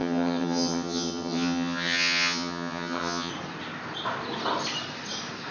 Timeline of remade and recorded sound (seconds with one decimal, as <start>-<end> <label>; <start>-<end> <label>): 0.0-3.3 remade; 3.3-5.5 recorded